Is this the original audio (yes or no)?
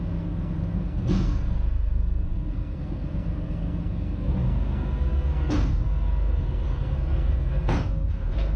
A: no